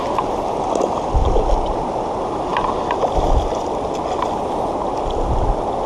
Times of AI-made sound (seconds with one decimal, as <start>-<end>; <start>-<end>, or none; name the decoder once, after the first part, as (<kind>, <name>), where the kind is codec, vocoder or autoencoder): none